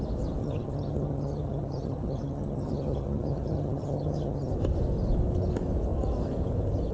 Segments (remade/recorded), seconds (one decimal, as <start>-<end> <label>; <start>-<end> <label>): 0.0-0.4 recorded; 0.4-4.5 remade; 4.5-6.9 recorded